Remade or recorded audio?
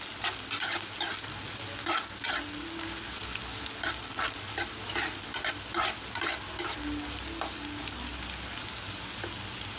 recorded